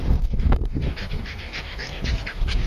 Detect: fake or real fake